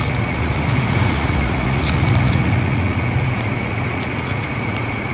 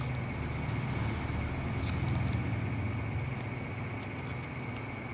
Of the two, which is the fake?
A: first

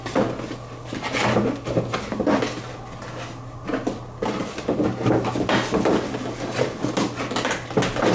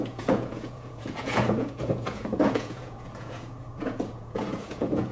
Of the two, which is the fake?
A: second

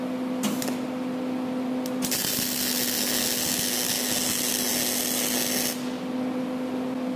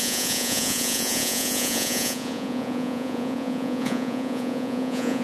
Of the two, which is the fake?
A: second